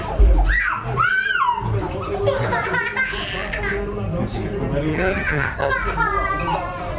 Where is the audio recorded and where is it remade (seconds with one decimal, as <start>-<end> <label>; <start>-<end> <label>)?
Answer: 0.0-4.9 recorded; 4.9-5.7 remade; 5.7-7.0 recorded